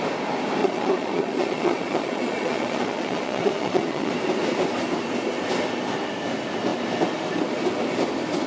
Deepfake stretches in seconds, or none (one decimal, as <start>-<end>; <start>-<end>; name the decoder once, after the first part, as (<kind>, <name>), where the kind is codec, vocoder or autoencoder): 0.6-4.1 (vocoder, Vocos)